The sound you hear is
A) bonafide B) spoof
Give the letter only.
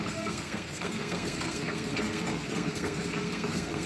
B